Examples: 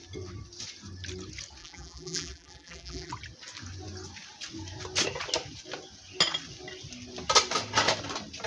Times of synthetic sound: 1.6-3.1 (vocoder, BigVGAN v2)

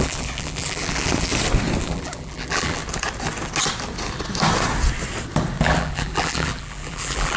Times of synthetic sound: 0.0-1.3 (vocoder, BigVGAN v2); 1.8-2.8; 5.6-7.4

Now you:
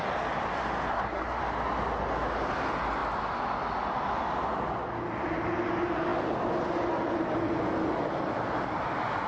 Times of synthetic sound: 0.9-1.4 (codec, SNAC)

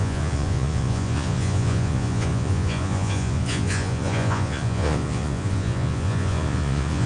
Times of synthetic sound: 0.0-7.1 (vocoder, Vocos)

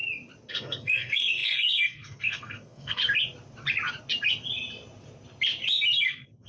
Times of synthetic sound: 0.5-3.0 (codec, SNAC); 6.0-6.5

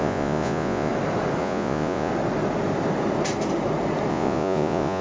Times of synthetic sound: 0.0-0.9 (vocoder, Vocos); 1.4-2.1; 4.1-5.0

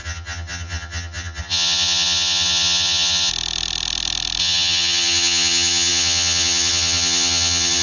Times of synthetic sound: 0.0-3.3 (vocoder, HiFi-GAN); 4.4-7.8